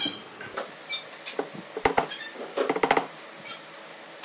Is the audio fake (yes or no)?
no